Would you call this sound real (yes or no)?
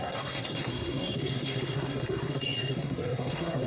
no